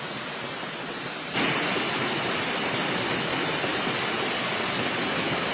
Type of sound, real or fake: real